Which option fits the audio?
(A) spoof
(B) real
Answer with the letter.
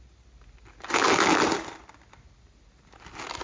B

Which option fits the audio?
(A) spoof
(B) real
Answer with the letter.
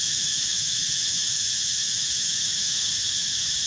A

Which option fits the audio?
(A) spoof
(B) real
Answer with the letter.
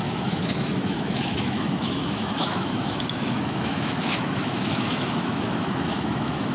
A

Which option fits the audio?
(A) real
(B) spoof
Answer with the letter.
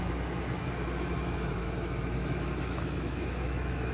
B